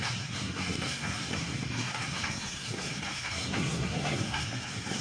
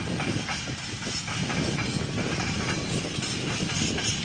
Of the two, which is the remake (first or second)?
first